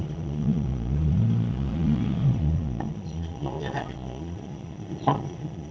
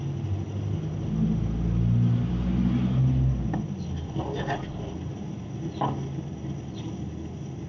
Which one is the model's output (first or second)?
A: first